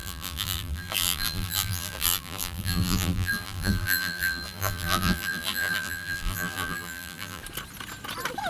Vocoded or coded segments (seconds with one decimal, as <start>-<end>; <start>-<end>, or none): 0.0-7.4